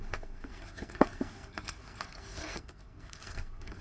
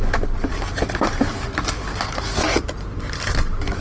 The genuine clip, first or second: second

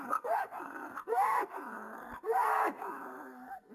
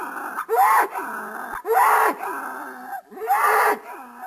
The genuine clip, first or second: second